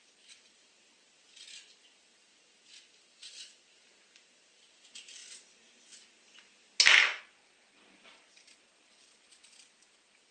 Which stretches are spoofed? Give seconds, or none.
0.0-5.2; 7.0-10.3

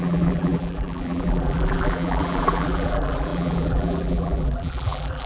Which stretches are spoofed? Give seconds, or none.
0.0-5.3

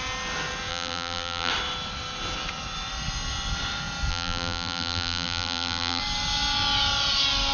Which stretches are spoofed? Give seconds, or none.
0.7-1.5; 4.1-6.0